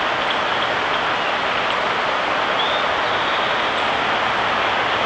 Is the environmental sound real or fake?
real